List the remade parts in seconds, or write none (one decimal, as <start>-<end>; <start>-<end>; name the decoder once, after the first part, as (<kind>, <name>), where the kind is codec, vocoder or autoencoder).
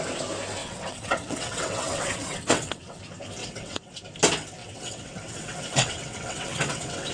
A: 0.6-3.0 (vocoder, WaveNeXt); 3.4-4.0; 4.6-7.1